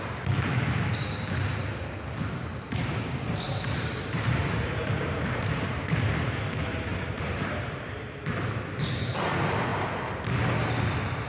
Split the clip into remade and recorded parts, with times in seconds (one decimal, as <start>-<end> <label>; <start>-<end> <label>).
0.0-2.5 recorded; 2.5-5.8 remade; 5.8-6.9 recorded; 6.9-7.5 remade; 7.5-11.3 recorded